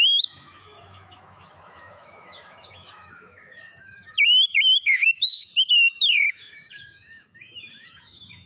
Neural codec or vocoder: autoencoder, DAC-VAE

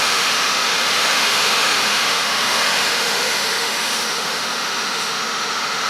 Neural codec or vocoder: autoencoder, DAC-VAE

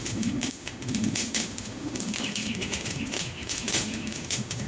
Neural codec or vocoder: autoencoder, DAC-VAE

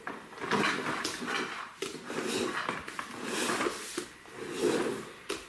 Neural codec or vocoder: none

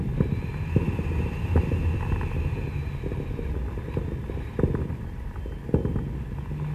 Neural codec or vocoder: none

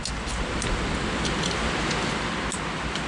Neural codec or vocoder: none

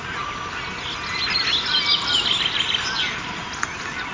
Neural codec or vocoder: none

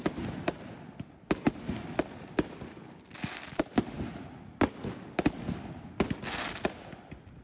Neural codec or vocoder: none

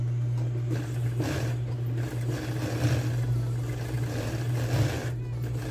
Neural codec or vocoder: none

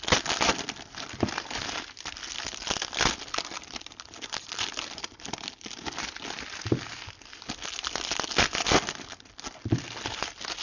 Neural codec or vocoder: none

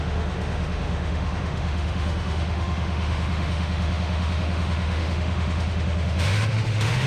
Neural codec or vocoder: autoencoder, DAC-VAE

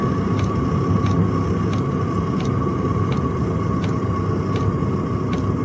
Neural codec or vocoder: none